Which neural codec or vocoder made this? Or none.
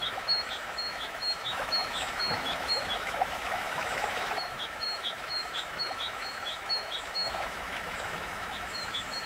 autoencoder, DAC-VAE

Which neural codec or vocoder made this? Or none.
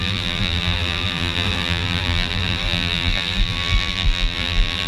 vocoder, BigVGAN v2